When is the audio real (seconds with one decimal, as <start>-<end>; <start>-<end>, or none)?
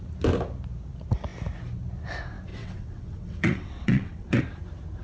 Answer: 0.0-2.5; 4.4-5.0